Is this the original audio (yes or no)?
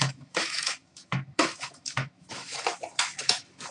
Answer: no